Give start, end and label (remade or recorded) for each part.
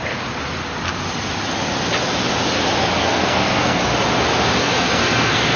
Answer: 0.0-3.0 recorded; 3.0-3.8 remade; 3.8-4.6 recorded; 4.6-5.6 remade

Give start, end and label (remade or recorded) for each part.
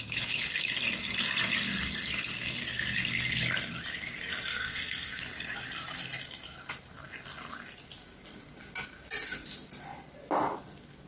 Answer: 0.0-4.5 recorded; 4.5-5.2 remade; 5.2-11.1 recorded